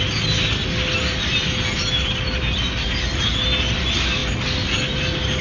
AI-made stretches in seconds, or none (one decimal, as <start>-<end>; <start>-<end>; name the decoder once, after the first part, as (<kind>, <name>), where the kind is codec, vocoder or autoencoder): none